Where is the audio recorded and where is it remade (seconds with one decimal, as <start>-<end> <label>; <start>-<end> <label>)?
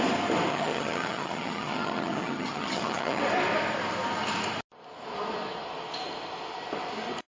0.0-0.5 recorded; 0.5-3.2 remade; 3.2-7.3 recorded